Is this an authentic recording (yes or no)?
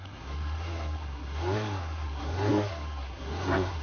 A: no